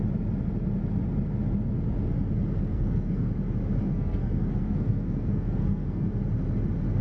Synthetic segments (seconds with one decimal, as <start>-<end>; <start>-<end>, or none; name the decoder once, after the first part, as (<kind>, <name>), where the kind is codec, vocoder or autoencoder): 2.6-3.3 (codec, SNAC); 3.8-6.1